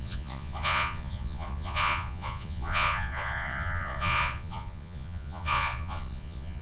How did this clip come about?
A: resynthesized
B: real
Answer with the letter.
A